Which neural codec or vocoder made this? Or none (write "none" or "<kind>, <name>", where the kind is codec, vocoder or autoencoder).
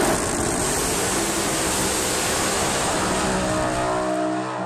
none